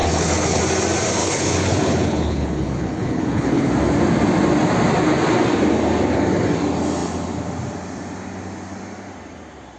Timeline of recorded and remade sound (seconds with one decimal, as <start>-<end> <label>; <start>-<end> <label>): 0.0-0.6 remade; 0.6-1.2 recorded; 1.2-3.7 remade; 3.7-9.8 recorded